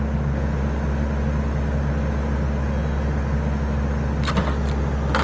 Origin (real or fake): real